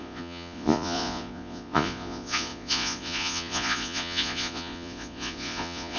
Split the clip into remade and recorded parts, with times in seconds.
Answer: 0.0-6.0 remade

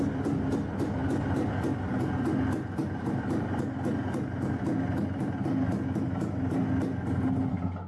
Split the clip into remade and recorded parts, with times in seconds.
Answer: 0.0-7.9 recorded

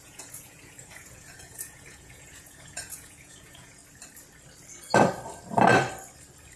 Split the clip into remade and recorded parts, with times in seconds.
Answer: 0.0-3.8 remade; 3.8-6.6 recorded

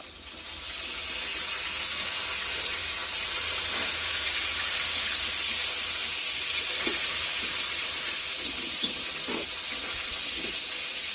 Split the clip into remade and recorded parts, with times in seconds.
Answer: 0.0-11.1 recorded

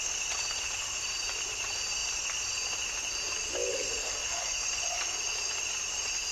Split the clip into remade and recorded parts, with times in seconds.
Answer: 0.0-3.7 recorded; 3.7-4.4 remade; 4.4-6.3 recorded

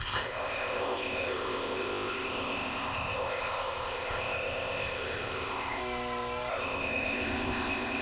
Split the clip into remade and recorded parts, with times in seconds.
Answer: 0.0-5.8 remade; 5.8-6.5 recorded; 6.5-8.0 remade